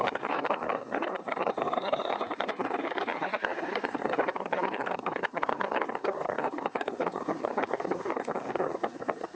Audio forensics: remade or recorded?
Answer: remade